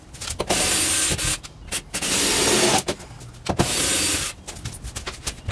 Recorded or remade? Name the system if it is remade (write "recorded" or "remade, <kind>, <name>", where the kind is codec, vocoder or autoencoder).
recorded